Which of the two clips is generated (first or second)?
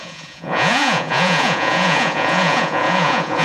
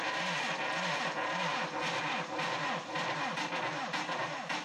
first